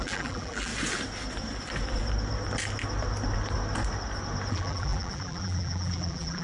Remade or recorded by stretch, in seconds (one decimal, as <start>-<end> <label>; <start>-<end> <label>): 0.0-0.7 remade; 0.7-4.5 recorded; 4.5-6.4 remade

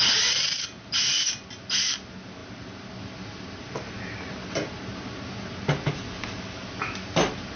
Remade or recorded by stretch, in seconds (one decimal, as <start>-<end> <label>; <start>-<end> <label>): 0.0-7.6 recorded